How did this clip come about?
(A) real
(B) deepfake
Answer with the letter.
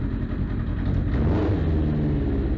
A